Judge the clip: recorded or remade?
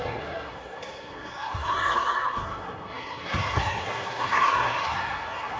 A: remade